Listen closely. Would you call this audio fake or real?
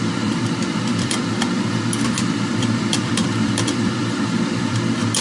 fake